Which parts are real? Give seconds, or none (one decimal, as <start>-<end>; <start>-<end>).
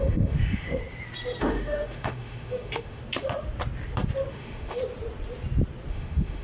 0.8-1.4; 3.0-4.3; 4.8-5.9